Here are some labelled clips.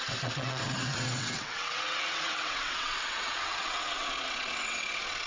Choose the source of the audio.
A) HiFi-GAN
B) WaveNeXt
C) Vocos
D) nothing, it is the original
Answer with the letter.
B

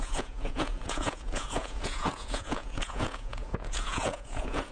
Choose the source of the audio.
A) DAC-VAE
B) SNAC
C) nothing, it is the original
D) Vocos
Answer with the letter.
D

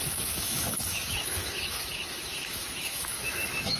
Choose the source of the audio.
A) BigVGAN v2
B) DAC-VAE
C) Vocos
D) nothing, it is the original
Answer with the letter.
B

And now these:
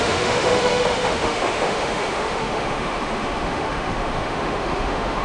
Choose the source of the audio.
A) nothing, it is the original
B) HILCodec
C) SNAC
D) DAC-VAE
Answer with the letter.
D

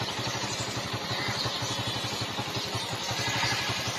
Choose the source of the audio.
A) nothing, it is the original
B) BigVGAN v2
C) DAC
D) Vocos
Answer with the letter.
A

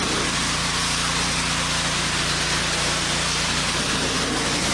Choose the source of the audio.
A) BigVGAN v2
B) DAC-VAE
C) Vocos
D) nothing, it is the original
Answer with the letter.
D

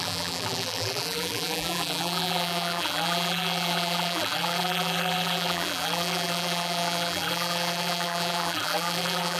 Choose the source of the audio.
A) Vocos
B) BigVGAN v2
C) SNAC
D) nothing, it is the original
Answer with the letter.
B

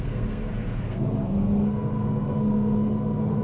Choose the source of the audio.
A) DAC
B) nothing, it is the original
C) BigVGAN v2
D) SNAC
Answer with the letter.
D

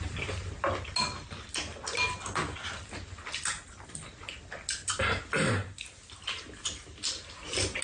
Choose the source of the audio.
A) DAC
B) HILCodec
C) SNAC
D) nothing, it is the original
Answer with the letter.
D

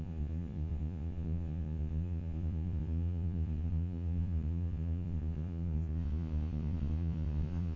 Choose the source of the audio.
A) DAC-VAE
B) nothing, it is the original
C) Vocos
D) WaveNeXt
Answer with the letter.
C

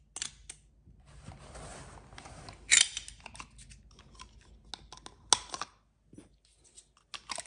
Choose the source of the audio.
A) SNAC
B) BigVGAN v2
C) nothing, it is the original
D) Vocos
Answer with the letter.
C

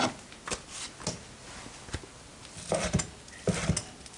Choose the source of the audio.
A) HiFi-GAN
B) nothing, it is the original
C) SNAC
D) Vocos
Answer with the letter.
B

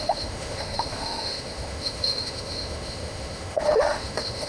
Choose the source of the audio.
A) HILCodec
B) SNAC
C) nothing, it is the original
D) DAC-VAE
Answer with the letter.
D